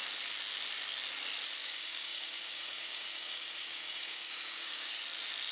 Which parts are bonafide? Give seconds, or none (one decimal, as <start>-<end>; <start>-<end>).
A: 0.0-1.6; 4.9-5.5